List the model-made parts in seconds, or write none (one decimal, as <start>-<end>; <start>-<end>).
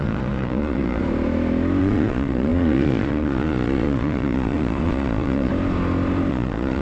0.0-1.0; 1.8-5.5; 6.3-6.8